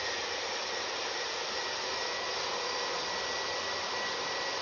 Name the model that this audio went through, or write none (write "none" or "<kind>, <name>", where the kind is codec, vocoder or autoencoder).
none